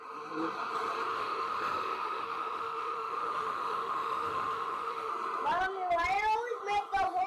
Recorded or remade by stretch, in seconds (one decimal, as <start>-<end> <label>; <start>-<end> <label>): 0.0-1.1 recorded; 1.1-5.1 remade; 5.1-7.3 recorded